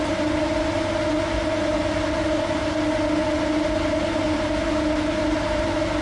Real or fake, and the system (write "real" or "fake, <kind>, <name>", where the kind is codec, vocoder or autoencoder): real